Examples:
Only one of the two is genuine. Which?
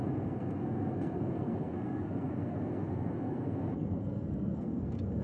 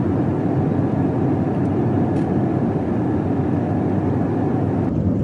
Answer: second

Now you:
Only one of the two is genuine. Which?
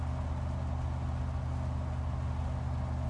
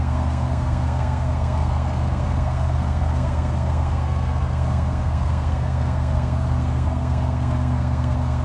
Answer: first